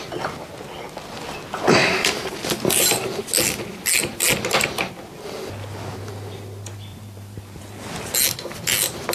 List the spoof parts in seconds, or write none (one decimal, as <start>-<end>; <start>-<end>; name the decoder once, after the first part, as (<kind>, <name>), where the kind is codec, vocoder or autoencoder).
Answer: 1.8-3.2 (vocoder, BigVGAN v2); 6.9-7.6